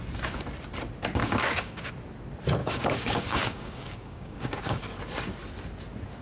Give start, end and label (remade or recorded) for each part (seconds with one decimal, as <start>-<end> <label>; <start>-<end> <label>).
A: 0.0-1.2 recorded; 1.2-1.9 remade; 1.9-2.6 recorded; 2.6-4.8 remade; 4.8-6.2 recorded

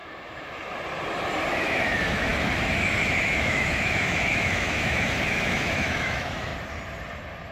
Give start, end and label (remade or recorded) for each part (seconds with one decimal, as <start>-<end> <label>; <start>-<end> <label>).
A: 0.0-1.6 recorded; 1.6-2.3 remade; 2.3-3.0 recorded; 3.0-6.5 remade; 6.5-7.5 recorded

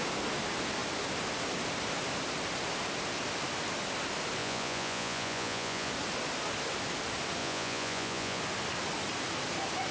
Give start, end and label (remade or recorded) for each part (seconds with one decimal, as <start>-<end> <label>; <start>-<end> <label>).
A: 0.0-4.4 recorded; 4.4-5.9 remade; 5.9-7.4 recorded; 7.4-8.4 remade; 8.4-9.9 recorded

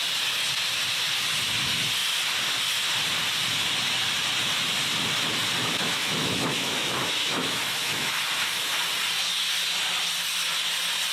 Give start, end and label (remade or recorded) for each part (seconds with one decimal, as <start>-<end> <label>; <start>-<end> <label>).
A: 0.0-5.6 recorded; 5.6-8.2 remade; 8.2-11.1 recorded